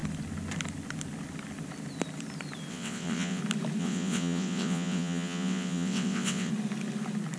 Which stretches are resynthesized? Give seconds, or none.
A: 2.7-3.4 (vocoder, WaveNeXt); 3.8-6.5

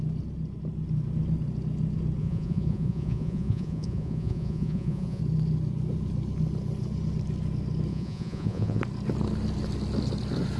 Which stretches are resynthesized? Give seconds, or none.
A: 2.2-5.2 (vocoder, Vocos); 7.9-8.8